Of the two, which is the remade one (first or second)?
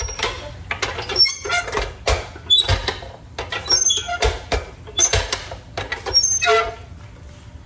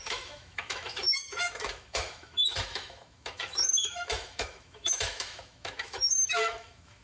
second